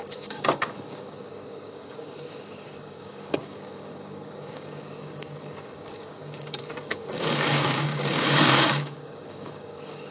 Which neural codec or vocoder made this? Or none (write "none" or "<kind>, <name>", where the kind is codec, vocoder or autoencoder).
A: codec, DAC